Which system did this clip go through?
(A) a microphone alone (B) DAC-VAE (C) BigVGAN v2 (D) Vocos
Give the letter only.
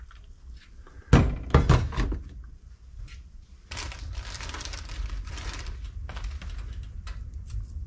A